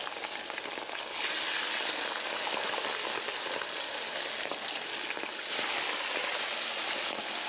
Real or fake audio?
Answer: real